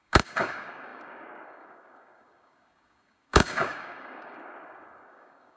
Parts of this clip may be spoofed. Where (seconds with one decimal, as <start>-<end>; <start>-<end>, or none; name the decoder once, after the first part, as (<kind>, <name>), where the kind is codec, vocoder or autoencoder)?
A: 0.0-5.6 (codec, DAC)